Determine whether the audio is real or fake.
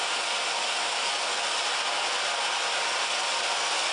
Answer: real